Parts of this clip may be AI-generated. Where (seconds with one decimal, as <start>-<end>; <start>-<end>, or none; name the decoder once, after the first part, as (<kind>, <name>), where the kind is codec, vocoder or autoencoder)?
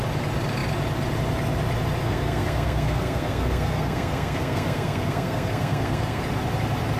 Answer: 2.0-6.2 (codec, SNAC)